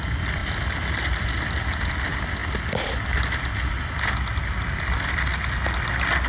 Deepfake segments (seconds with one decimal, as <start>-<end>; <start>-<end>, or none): none